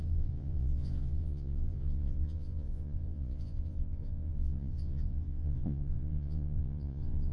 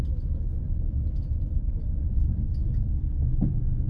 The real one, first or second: second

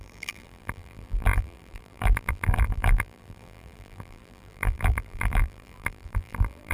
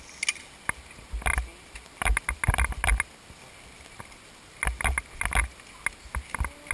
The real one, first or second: second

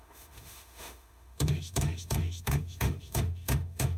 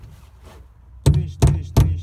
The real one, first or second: second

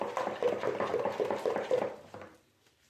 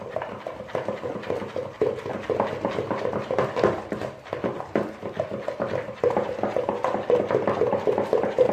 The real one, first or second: second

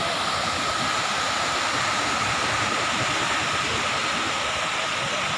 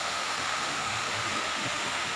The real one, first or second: first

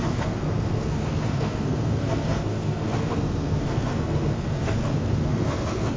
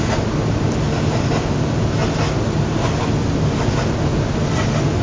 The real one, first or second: second